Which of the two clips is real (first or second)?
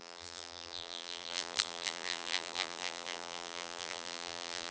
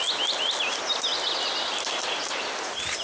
second